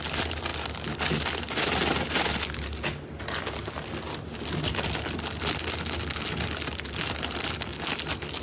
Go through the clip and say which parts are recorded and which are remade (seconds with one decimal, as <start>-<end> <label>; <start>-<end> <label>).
0.0-8.4 recorded

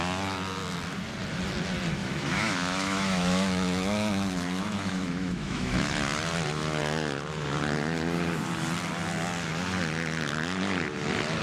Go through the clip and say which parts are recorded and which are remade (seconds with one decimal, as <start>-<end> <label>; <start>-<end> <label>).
0.0-2.0 recorded; 2.0-5.9 remade; 5.9-11.4 recorded

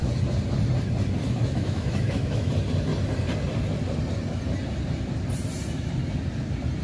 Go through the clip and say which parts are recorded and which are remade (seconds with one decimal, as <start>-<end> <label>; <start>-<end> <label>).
0.0-1.2 recorded; 1.2-2.5 remade; 2.5-6.8 recorded

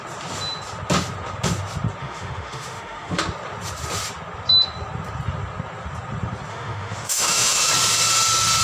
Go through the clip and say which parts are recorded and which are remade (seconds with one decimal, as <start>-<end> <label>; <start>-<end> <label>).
0.0-2.0 recorded; 2.0-3.2 remade; 3.2-6.5 recorded; 6.5-7.7 remade; 7.7-8.6 recorded

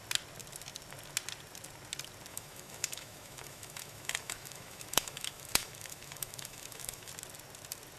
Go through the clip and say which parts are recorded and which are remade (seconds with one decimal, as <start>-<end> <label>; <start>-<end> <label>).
0.0-2.3 recorded; 2.3-7.1 remade; 7.1-8.0 recorded

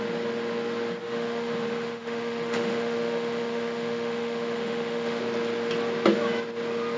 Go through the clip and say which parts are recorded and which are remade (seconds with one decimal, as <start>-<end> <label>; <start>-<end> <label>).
0.0-1.0 recorded; 1.0-5.2 remade; 5.2-7.0 recorded

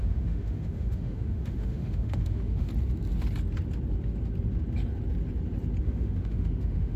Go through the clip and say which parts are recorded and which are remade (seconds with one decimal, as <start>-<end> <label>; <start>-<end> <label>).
0.0-2.7 remade; 2.7-5.8 recorded; 5.8-7.0 remade